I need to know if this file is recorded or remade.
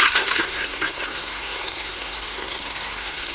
remade